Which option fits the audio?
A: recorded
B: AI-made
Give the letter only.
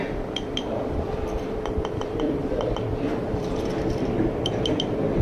B